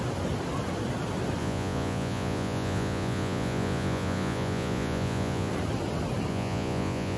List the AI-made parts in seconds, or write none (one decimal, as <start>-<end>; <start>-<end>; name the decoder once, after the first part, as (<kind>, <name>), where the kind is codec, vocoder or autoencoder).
1.4-5.5 (vocoder, Vocos); 6.3-7.2